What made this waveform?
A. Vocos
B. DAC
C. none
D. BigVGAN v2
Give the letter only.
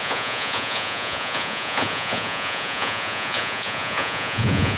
A